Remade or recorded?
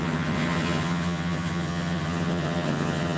remade